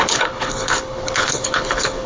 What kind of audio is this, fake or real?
fake